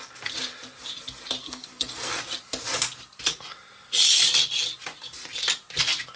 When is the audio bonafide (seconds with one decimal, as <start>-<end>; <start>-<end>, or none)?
0.0-1.4; 2.2-6.2